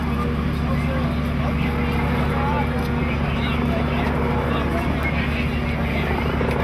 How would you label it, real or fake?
real